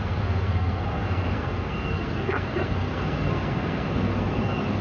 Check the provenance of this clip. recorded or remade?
remade